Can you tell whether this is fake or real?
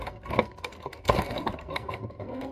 fake